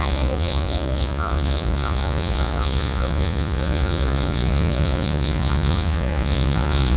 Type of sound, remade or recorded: remade